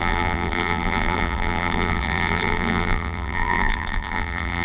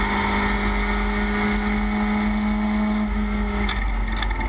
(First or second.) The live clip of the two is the second